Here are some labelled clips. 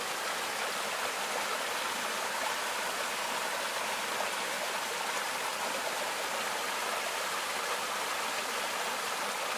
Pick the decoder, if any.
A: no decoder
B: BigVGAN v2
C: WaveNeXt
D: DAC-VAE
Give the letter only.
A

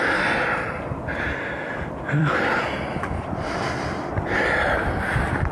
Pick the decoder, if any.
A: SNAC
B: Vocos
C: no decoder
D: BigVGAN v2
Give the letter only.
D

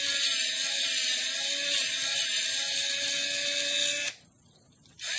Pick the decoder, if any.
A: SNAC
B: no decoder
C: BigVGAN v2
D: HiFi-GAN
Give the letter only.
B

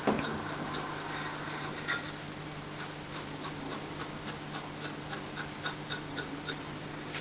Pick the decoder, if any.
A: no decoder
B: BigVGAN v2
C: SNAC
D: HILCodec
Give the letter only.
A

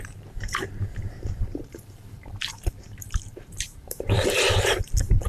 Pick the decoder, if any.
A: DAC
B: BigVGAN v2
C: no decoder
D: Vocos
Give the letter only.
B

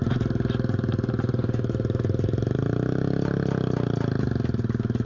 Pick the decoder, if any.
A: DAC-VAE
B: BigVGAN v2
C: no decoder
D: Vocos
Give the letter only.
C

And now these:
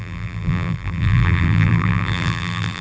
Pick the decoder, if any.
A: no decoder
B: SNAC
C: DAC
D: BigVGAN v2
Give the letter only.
D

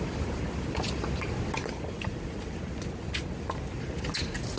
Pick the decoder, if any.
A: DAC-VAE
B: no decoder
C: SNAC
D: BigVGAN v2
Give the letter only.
B